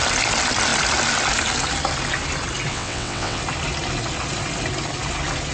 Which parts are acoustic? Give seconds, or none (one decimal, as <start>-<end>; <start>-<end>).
0.0-2.7; 3.4-5.5